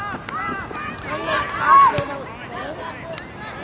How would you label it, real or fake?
real